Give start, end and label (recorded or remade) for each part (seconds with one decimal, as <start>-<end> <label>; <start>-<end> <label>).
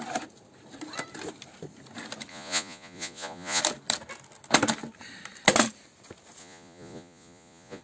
0.0-2.3 recorded; 2.3-3.6 remade; 3.6-6.4 recorded; 6.4-7.8 remade